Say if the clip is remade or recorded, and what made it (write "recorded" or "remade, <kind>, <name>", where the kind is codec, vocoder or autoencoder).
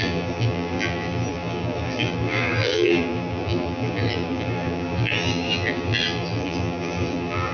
remade, vocoder, BigVGAN v2